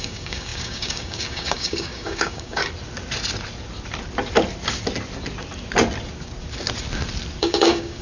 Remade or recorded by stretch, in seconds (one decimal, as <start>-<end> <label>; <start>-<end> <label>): 0.0-2.6 remade; 2.6-7.4 recorded; 7.4-8.0 remade